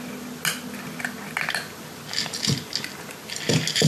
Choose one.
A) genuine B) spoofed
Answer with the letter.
A